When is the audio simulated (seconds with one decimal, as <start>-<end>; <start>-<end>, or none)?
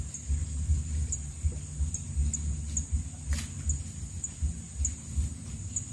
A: 0.4-1.5